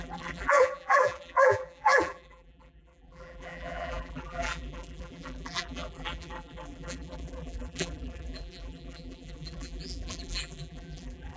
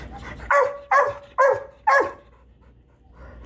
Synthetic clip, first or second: first